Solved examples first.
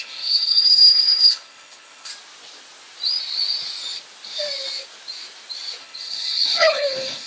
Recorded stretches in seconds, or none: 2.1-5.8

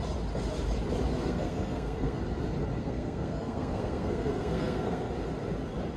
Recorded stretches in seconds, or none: 0.0-1.1; 2.2-2.8; 5.1-6.0

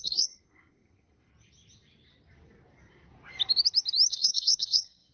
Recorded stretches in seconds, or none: 1.3-4.1

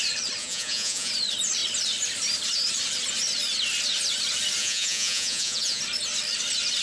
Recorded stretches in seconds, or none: 0.0-0.4; 1.1-4.6; 5.8-6.8